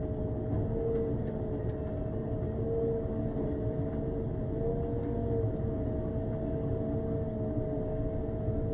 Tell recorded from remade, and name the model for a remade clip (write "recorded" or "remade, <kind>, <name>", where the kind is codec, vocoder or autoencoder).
recorded